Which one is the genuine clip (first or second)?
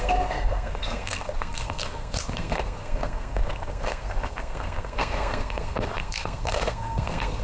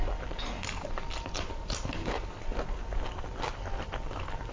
second